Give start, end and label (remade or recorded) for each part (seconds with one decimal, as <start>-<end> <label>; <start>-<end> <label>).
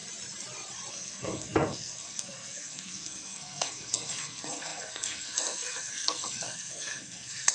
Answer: 0.0-0.9 recorded; 0.9-7.5 remade